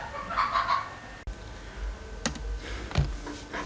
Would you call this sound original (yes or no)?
yes